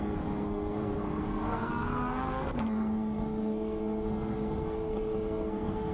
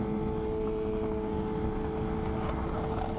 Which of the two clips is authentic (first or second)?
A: second